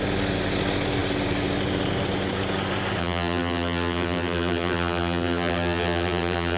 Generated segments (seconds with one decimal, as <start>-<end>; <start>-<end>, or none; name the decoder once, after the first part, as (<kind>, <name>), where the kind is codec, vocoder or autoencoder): 3.0-6.6 (vocoder, BigVGAN v2)